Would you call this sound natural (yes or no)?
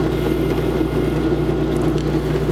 yes